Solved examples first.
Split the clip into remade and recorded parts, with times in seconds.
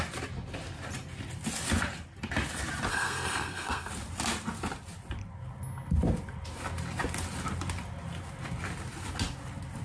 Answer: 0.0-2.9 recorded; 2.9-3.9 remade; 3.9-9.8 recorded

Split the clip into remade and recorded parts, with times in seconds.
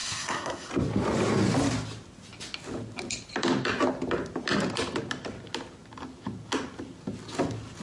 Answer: 0.0-0.7 remade; 0.7-7.8 recorded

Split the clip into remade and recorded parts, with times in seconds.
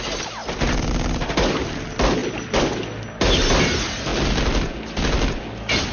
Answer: 0.0-5.9 recorded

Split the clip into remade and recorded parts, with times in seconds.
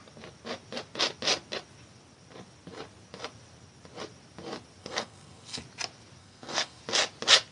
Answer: 0.0-4.8 recorded; 4.8-5.6 remade; 5.6-6.2 recorded; 6.2-6.8 remade; 6.8-7.5 recorded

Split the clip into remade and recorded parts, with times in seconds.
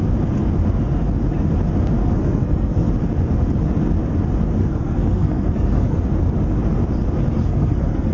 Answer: 0.0-2.0 recorded; 2.0-2.9 remade; 2.9-4.6 recorded; 4.6-6.0 remade; 6.0-7.4 recorded; 7.4-8.1 remade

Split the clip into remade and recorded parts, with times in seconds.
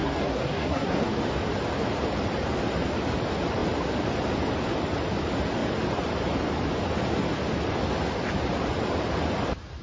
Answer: 0.0-1.2 remade; 1.2-9.8 recorded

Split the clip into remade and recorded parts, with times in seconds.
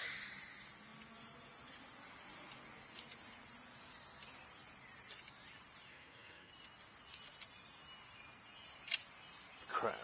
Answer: 0.0-5.9 recorded; 5.9-6.5 remade; 6.5-10.0 recorded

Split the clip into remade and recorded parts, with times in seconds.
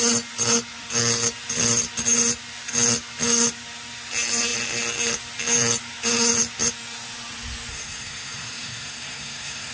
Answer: 0.0-7.7 recorded; 7.7-9.7 remade